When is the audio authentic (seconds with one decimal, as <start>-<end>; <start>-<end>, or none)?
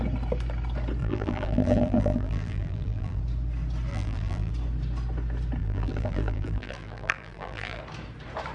0.0-1.0; 3.2-3.9; 4.5-5.6; 7.8-8.5